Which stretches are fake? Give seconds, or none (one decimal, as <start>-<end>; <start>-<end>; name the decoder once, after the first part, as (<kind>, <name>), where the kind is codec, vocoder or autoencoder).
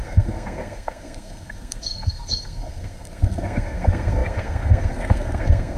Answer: 0.0-5.8 (codec, SNAC)